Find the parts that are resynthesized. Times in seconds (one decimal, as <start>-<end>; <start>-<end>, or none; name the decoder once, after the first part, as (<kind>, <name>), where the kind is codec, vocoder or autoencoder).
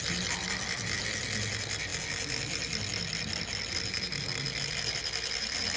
none